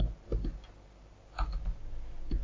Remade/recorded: recorded